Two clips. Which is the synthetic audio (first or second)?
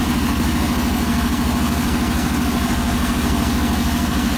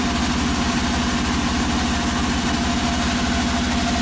first